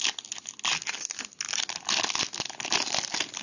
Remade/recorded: recorded